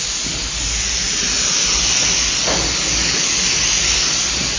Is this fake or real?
real